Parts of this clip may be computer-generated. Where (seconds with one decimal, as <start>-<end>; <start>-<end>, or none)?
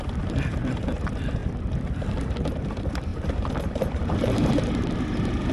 3.1-5.5